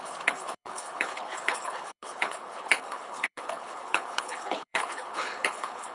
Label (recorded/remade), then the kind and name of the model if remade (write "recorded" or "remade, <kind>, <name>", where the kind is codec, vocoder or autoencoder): remade, codec, HILCodec